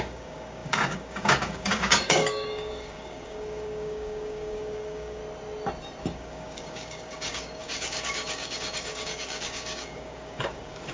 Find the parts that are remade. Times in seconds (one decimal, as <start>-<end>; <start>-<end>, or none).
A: 0.0-5.2; 6.0-10.9